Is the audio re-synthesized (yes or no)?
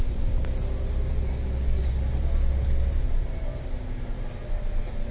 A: no